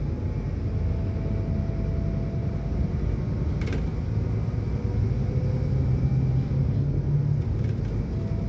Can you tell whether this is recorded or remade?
recorded